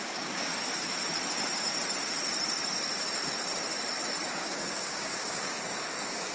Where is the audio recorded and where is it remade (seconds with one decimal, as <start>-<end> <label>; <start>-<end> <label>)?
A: 0.0-0.5 remade; 0.5-4.3 recorded; 4.3-6.3 remade